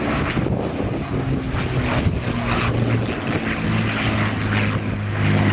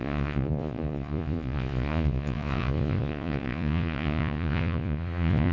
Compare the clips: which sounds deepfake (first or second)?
second